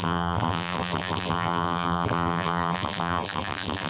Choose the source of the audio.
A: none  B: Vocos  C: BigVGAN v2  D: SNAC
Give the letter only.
C